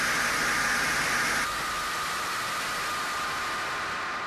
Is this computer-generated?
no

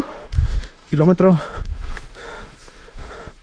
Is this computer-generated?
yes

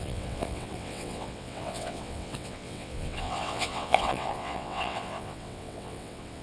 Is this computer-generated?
yes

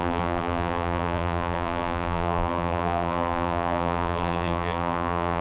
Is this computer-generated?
yes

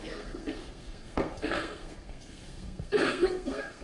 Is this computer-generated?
yes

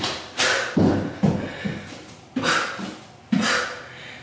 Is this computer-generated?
no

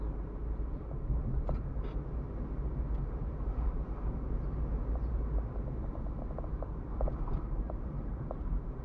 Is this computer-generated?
yes